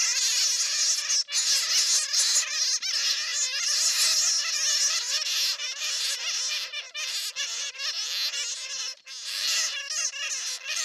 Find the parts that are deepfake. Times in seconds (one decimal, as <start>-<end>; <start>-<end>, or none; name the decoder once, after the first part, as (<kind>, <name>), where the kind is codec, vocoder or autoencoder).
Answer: none